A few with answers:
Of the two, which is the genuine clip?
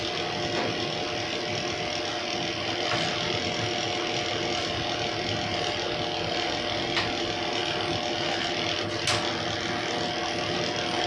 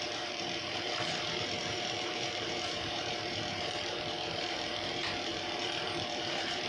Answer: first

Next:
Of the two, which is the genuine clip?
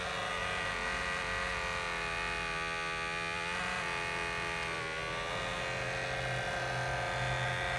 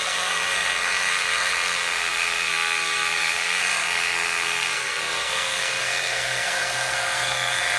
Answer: first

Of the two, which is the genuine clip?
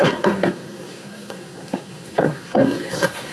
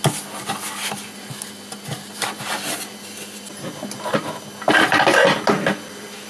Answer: second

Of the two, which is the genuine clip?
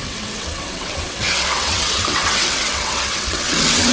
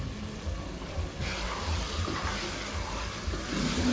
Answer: second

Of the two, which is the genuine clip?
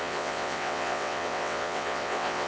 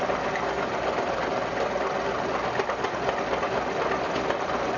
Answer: second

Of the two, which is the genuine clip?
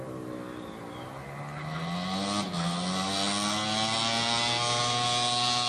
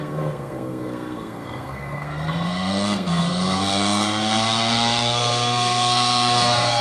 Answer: first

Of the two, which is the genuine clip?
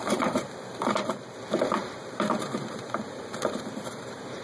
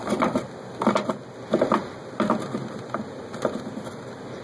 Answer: second